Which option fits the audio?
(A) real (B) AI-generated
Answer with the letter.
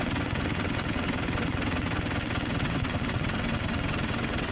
B